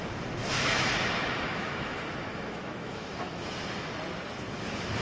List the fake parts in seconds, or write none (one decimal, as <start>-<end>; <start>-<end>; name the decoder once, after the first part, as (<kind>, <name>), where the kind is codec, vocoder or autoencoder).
0.4-3.4 (autoencoder, DAC-VAE)